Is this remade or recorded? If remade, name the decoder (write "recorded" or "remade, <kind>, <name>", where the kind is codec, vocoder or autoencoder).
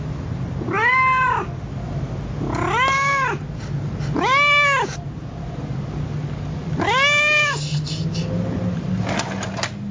recorded